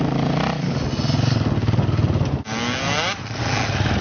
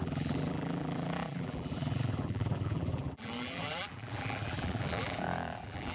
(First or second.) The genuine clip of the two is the first